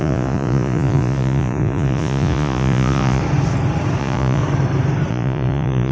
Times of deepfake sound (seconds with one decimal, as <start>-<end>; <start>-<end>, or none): 0.0-3.2; 4.0-4.4; 5.1-5.9